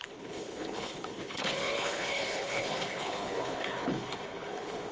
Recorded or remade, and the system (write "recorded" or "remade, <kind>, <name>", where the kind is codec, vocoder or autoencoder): remade, codec, HILCodec